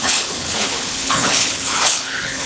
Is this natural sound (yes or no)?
no